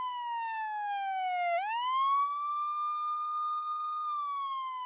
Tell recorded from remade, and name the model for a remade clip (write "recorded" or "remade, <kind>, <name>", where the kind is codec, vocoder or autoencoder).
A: remade, autoencoder, DAC-VAE